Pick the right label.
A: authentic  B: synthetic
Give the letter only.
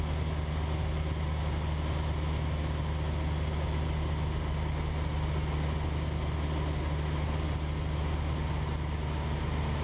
A